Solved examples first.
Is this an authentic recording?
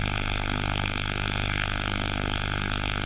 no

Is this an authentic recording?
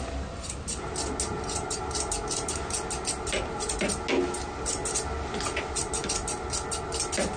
yes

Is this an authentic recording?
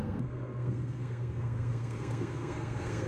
no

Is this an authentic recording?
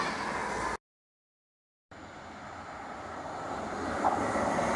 yes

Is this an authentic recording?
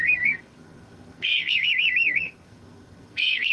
no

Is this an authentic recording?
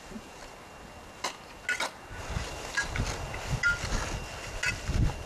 yes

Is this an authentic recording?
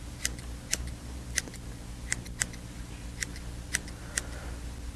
yes